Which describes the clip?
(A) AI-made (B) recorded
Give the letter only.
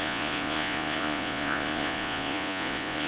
A